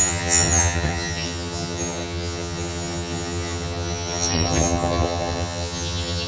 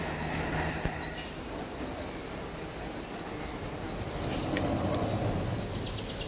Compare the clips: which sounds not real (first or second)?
first